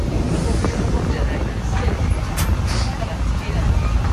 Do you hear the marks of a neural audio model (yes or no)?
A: no